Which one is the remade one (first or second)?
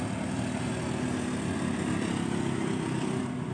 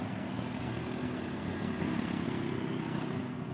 second